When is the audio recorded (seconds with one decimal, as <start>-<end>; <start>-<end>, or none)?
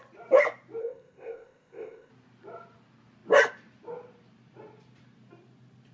0.0-0.8; 2.1-5.9